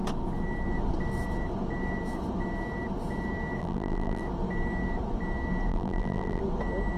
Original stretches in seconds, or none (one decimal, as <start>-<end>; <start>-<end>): 0.0-3.6; 4.2-5.7; 6.4-7.0